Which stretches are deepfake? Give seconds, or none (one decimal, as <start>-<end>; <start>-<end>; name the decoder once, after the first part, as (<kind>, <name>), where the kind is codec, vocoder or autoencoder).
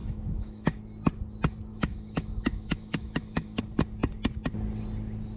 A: 0.0-0.8 (autoencoder, DAC-VAE); 1.7-3.6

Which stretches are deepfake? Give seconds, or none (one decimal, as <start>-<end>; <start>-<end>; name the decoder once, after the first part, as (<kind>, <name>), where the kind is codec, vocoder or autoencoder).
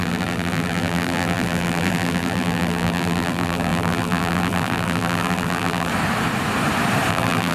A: 0.0-5.9 (vocoder, BigVGAN v2); 7.1-7.5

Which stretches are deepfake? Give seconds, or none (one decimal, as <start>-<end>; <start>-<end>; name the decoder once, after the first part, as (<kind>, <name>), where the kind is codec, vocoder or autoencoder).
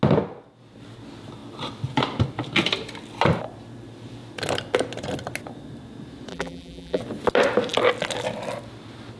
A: 6.3-7.0 (vocoder, BigVGAN v2)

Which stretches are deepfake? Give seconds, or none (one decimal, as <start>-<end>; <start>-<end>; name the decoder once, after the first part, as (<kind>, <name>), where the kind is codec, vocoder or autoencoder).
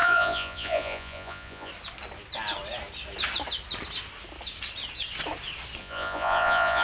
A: 0.0-1.7 (vocoder, Vocos); 5.8-6.8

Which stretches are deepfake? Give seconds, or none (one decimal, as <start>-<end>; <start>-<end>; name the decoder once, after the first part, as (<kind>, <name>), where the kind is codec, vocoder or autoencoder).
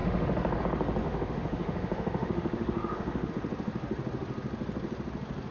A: 0.0-0.6 (autoencoder, DAC-VAE); 1.0-3.3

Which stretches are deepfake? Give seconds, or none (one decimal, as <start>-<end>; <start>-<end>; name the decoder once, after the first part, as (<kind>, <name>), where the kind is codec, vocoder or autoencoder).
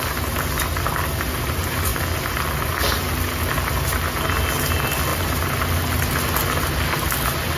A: none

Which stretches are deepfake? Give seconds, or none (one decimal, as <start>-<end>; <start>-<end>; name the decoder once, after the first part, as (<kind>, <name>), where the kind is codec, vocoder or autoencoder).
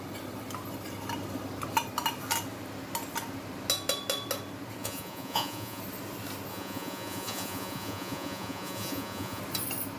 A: 4.8-5.8 (vocoder, Vocos); 6.5-9.4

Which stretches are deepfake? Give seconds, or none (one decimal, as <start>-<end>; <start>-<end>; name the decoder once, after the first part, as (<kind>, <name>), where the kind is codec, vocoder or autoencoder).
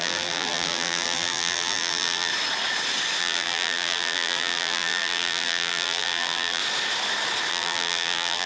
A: 0.0-2.3 (vocoder, BigVGAN v2); 3.2-6.6; 7.5-8.5